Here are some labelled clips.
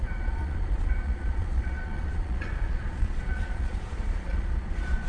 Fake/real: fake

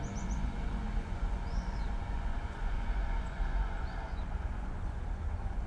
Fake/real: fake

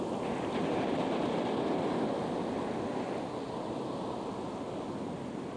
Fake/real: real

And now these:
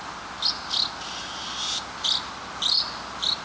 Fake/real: real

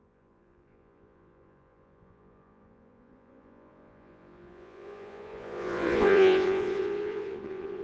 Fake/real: fake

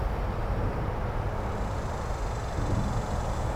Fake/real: real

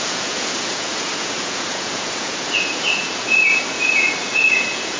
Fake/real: fake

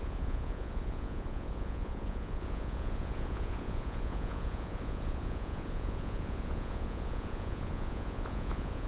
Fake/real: fake